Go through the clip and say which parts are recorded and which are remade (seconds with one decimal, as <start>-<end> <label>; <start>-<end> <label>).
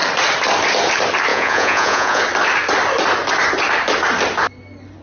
0.0-1.3 recorded; 1.3-2.2 remade; 2.2-5.0 recorded